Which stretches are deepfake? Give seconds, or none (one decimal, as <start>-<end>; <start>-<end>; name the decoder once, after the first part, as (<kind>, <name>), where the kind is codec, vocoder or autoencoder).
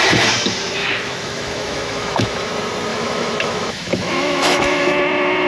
0.8-2.5 (autoencoder, DAC-VAE); 2.9-4.9